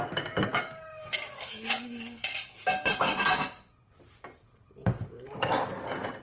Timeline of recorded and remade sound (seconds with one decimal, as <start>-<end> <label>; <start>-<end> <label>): 0.0-0.5 recorded; 0.5-3.2 remade; 3.2-4.8 recorded; 4.8-5.7 remade; 5.7-6.2 recorded

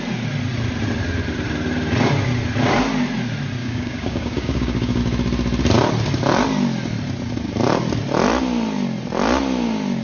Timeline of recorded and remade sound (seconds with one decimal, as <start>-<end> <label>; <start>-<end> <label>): 0.0-3.6 recorded; 3.6-5.0 remade; 5.0-10.0 recorded

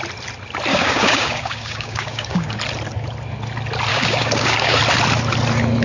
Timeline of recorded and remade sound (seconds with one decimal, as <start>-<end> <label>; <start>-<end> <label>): 0.0-0.7 recorded; 0.7-2.6 remade; 2.6-3.9 recorded; 3.9-4.8 remade; 4.8-5.8 recorded

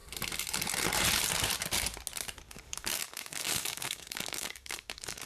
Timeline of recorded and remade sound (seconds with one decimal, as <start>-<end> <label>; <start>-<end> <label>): 0.0-2.4 recorded; 2.4-5.3 remade

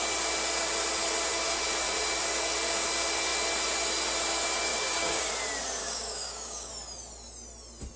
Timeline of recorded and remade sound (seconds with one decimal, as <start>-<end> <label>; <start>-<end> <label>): 0.0-4.7 recorded; 4.7-5.3 remade; 5.3-5.8 recorded; 5.8-6.7 remade; 6.7-8.0 recorded